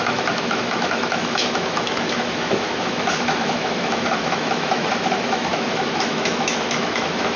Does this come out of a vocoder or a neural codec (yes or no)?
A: yes